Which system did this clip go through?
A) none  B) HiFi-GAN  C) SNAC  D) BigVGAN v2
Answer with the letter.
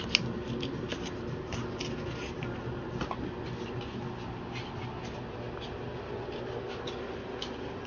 A